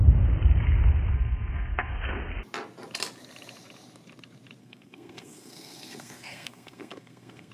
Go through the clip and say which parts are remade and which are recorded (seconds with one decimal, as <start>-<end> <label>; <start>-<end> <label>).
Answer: 0.0-1.1 recorded; 1.1-1.9 remade; 1.9-4.6 recorded; 4.6-7.5 remade